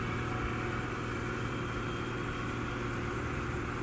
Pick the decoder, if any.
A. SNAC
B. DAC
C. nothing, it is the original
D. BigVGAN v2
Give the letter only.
C